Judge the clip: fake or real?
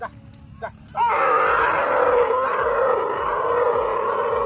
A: real